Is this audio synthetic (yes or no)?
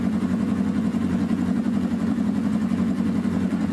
yes